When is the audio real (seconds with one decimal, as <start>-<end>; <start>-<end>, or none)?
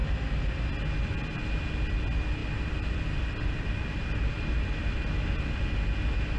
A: 0.0-2.4; 5.6-6.4